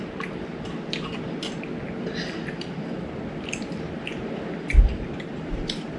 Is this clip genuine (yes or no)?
yes